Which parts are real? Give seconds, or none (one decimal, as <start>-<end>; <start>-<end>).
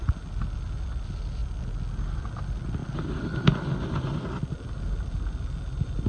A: 0.0-6.1